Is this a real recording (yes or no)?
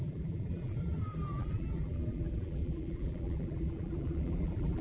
no